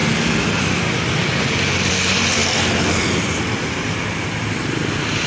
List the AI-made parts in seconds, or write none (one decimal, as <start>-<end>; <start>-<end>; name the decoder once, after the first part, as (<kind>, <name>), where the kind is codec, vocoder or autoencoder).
none